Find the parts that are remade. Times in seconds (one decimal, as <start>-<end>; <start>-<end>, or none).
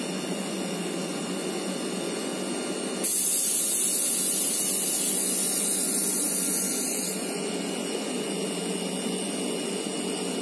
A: 0.0-2.3; 5.1-10.4